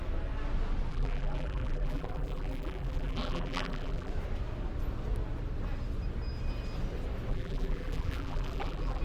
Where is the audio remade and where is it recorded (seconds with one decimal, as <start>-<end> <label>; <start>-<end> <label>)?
0.0-0.9 recorded; 0.9-4.1 remade; 4.1-7.3 recorded; 7.3-9.0 remade

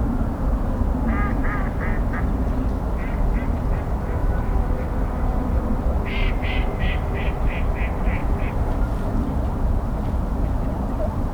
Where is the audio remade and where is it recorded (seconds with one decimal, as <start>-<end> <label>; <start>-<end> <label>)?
0.0-4.2 recorded; 4.2-7.7 remade; 7.7-8.2 recorded; 8.2-8.8 remade; 8.8-11.3 recorded